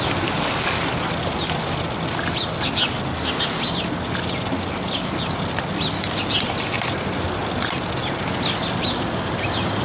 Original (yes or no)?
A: yes